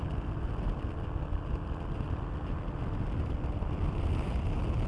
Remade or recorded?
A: recorded